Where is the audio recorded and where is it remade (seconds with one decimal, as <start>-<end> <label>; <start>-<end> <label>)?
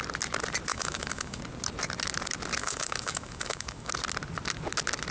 0.0-0.7 recorded; 0.7-1.4 remade; 1.4-2.6 recorded; 2.6-3.9 remade; 3.9-5.1 recorded